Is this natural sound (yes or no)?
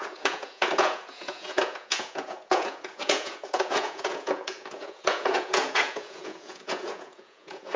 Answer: no